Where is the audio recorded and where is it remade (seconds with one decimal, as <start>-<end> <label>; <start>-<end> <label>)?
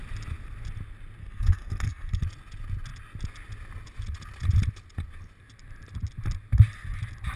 0.0-1.2 recorded; 1.2-2.2 remade; 2.2-7.4 recorded